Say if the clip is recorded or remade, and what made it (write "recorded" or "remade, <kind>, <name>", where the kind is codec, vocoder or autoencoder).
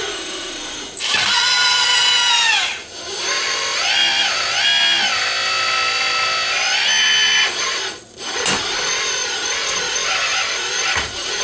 recorded